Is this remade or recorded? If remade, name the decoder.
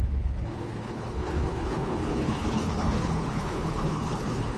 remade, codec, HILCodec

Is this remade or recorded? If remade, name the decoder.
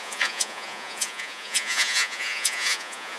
remade, vocoder, Vocos